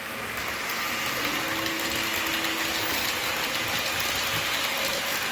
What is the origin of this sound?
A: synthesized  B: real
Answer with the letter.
B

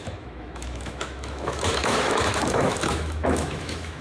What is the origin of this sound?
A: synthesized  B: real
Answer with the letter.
A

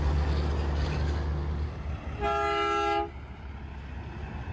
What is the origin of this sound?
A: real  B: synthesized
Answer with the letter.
A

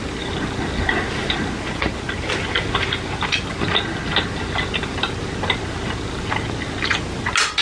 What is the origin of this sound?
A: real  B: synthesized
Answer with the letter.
A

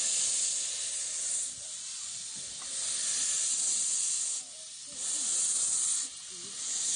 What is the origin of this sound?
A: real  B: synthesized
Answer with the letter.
A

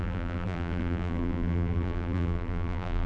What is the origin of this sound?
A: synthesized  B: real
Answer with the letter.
A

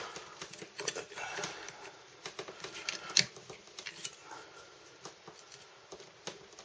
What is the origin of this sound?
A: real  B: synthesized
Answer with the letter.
A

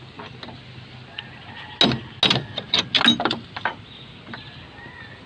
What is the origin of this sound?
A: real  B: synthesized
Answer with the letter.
A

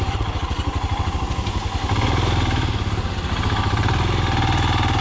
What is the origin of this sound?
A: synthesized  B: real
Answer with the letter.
B